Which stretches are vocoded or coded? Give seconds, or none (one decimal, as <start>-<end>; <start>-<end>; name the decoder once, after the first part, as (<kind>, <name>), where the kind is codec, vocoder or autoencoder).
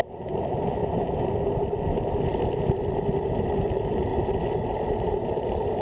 0.0-0.8 (vocoder, BigVGAN v2); 3.5-4.1; 4.6-5.8